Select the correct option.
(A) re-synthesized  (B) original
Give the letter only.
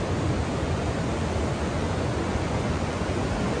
A